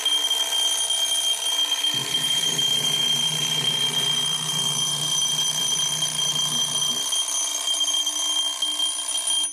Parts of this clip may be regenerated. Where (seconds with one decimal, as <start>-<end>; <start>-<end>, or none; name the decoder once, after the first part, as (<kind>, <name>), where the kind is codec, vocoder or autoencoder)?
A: 2.0-6.9 (vocoder, BigVGAN v2); 7.5-8.0